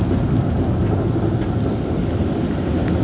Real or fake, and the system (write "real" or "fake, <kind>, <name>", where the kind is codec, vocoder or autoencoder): real